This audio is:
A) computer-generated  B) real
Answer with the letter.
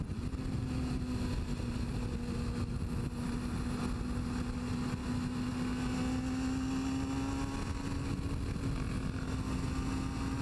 B